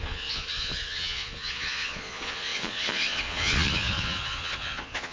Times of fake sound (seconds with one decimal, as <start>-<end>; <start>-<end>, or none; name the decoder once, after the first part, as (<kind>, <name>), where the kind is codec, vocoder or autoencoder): 0.0-5.1 (vocoder, Vocos)